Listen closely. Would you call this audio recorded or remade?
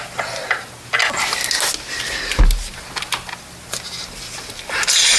recorded